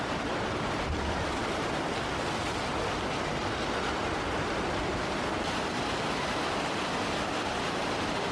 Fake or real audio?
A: real